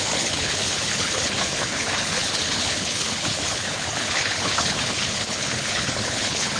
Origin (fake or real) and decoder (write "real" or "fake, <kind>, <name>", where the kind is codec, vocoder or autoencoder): fake, codec, HILCodec